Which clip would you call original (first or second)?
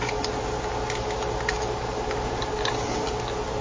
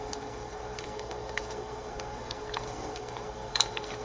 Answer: first